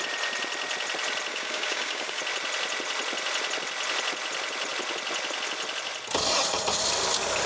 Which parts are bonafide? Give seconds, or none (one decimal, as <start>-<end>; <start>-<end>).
0.0-1.3; 2.2-7.5

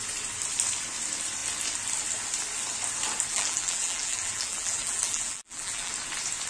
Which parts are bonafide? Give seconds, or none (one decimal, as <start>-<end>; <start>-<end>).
0.0-3.3; 5.9-6.5

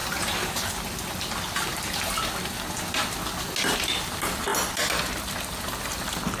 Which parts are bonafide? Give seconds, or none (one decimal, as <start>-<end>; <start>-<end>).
0.0-6.4

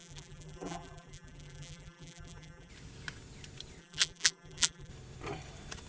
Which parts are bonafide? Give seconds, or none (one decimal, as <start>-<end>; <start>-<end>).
2.7-3.8; 4.9-5.9

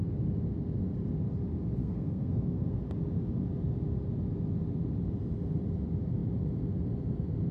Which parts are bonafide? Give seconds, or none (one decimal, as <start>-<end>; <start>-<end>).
0.0-1.8; 2.8-7.5

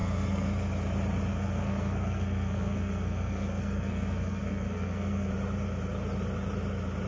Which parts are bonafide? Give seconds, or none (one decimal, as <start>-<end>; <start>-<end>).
0.5-1.3; 5.3-7.1

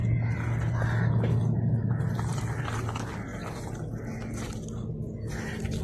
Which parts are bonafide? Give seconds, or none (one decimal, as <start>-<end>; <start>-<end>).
0.0-5.8

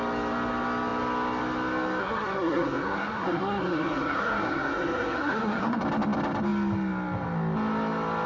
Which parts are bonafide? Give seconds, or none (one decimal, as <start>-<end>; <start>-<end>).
0.0-2.0; 5.8-8.3